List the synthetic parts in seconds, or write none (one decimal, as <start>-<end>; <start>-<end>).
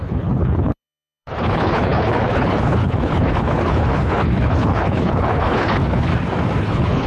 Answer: 0.0-6.1; 6.6-7.1